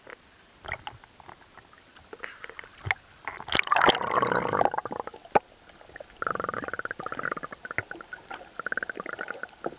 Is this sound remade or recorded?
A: recorded